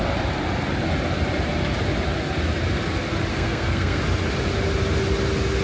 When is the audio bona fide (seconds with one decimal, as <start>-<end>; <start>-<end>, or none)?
0.0-3.3; 4.0-5.6

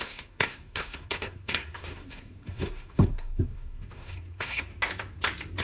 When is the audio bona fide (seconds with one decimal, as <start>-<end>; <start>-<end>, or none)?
4.7-5.6

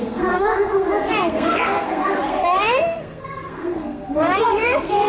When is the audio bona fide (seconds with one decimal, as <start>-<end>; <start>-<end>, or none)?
none

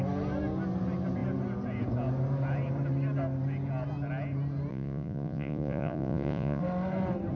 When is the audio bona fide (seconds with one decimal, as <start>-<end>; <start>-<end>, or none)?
0.0-4.7; 6.6-7.4

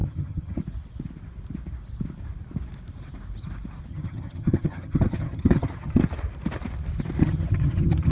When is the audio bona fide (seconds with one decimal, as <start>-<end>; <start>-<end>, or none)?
0.6-3.9; 6.0-7.2

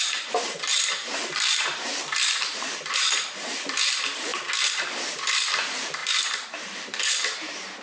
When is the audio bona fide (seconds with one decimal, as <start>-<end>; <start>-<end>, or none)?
1.9-2.9; 4.3-5.6

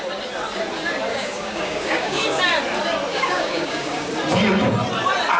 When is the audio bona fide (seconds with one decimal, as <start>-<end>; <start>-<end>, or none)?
0.0-1.1; 2.4-3.1; 4.1-5.4

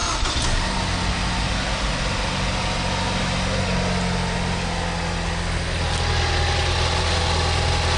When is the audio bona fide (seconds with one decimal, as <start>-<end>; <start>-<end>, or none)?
0.0-8.0